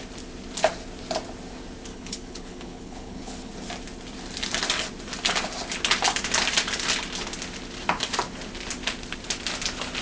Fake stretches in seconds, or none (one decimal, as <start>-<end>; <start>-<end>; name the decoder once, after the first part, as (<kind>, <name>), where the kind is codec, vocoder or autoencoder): 1.9-3.5 (codec, HILCodec)